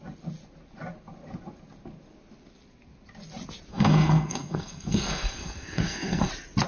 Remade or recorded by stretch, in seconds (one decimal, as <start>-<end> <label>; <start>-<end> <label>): 0.0-3.7 recorded; 3.7-6.3 remade; 6.3-6.7 recorded